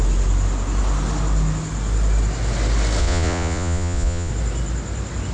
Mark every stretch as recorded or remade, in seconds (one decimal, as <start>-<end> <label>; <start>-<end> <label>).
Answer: 0.0-3.0 recorded; 3.0-4.3 remade; 4.3-5.3 recorded